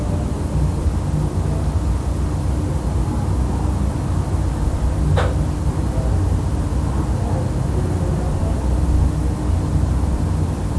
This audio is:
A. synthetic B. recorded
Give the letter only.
B